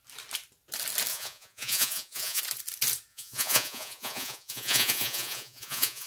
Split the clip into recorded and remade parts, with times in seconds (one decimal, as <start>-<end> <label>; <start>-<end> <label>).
0.0-1.1 recorded; 1.1-2.4 remade; 2.4-3.1 recorded; 3.1-6.1 remade